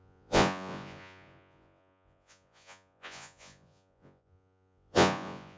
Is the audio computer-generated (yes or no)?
yes